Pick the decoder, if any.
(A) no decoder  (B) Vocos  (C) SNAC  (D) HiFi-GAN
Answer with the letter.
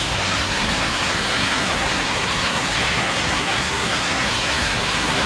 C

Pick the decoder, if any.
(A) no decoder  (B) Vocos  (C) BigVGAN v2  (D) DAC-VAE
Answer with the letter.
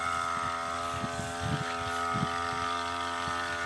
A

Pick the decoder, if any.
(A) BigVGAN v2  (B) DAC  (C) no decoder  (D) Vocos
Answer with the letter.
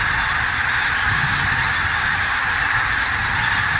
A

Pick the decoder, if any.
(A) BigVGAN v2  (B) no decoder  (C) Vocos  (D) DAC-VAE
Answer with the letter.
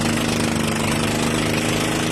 B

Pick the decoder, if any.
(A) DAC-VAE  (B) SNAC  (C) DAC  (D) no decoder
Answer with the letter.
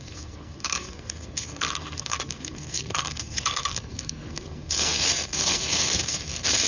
B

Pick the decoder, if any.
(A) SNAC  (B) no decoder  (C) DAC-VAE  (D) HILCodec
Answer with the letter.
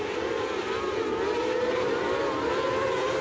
B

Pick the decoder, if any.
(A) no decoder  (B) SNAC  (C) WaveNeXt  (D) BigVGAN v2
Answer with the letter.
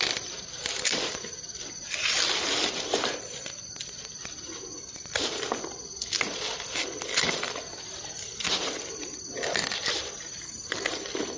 A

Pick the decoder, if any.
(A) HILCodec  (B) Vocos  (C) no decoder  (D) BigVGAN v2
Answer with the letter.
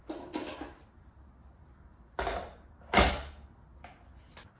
C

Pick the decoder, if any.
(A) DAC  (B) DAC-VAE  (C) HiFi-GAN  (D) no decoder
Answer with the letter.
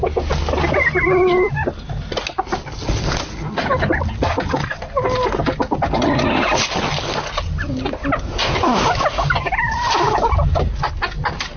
D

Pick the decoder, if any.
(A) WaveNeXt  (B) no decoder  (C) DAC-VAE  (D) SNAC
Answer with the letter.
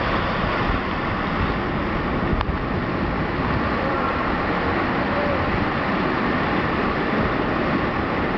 B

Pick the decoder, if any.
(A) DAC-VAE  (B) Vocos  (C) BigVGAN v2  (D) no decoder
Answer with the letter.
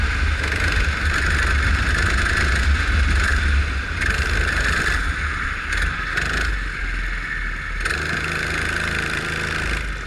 D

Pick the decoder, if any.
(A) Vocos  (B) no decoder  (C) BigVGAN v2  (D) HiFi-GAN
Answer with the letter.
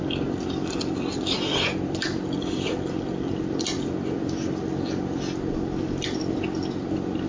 B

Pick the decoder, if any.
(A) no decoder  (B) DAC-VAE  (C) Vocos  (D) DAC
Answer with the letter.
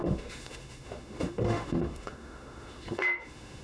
B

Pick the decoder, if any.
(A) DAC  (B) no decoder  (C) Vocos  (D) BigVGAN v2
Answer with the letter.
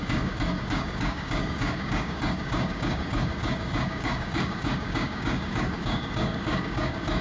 A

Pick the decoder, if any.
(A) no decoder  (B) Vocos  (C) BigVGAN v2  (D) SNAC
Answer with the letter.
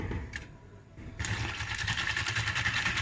A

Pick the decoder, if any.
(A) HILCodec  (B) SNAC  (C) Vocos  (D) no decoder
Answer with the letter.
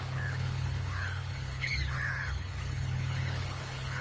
A